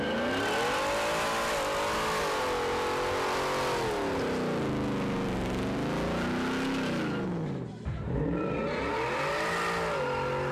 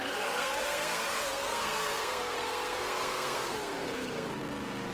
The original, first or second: first